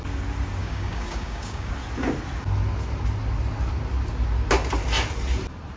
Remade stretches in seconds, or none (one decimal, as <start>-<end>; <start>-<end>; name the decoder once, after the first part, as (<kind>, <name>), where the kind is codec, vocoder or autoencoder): 0.6-1.7 (codec, DAC)